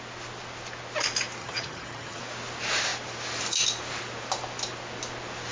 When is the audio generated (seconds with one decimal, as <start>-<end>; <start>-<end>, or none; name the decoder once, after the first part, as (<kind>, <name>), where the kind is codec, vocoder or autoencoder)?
1.4-2.2 (vocoder, HiFi-GAN)